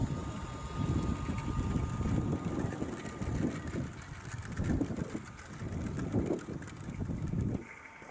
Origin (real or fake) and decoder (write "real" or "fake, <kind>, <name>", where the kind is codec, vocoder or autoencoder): real